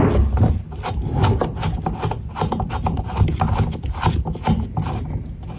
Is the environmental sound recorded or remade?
recorded